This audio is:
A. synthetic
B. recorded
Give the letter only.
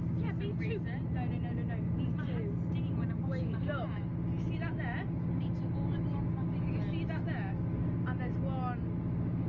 B